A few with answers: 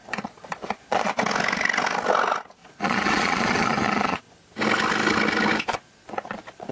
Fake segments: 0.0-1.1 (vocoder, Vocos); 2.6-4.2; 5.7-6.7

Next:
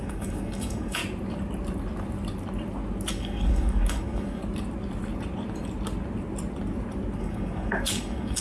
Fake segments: 0.0-1.0 (codec, DAC); 3.1-4.4; 7.2-8.4

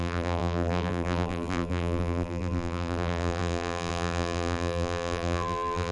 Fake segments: 0.0-5.9 (vocoder, BigVGAN v2)

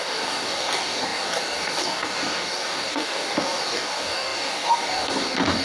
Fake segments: 0.0-5.6 (codec, DAC)